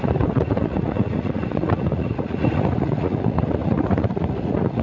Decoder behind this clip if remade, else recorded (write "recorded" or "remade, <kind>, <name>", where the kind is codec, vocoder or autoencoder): remade, vocoder, Vocos